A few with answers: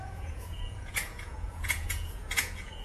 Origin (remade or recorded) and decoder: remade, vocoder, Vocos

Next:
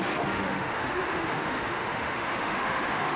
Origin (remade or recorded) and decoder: remade, autoencoder, DAC-VAE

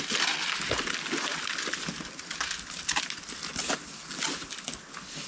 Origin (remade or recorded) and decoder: recorded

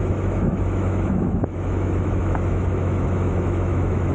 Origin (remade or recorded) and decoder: remade, autoencoder, DAC-VAE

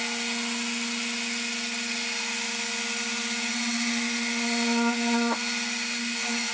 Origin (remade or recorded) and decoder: recorded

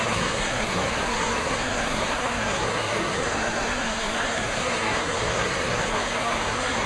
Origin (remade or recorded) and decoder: remade, codec, SNAC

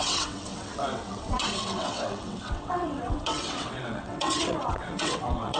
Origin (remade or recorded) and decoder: remade, vocoder, WaveNeXt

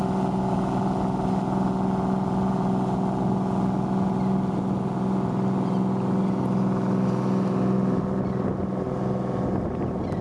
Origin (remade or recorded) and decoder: recorded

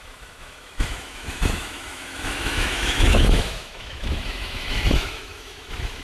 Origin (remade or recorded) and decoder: remade, autoencoder, DAC-VAE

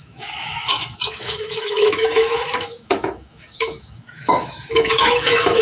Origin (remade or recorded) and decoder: remade, autoencoder, DAC-VAE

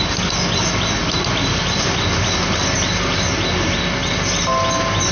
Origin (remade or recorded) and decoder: recorded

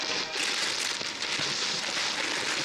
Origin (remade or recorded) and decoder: recorded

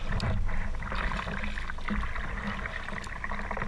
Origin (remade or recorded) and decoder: recorded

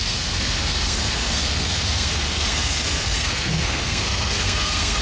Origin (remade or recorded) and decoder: remade, codec, SNAC